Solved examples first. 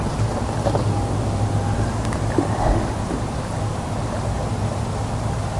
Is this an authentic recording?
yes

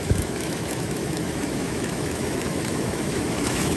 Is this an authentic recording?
no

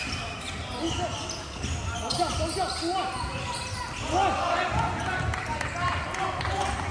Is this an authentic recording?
yes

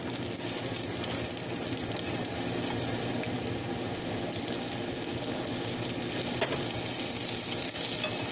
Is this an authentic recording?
yes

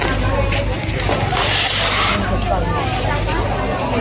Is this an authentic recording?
yes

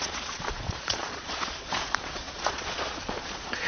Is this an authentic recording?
no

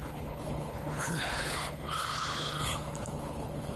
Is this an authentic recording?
no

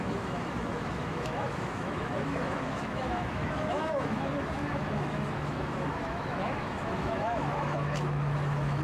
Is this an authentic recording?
no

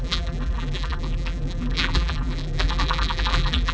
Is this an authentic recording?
no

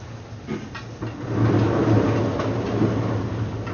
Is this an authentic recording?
yes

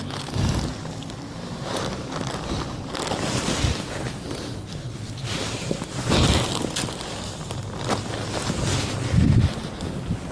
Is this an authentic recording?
yes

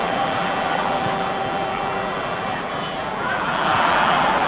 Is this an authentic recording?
no